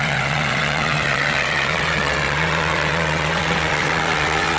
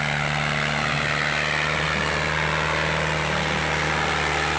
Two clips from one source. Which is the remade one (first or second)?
first